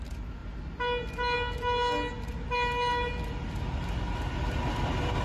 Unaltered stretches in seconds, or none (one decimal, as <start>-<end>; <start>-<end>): 0.0-5.2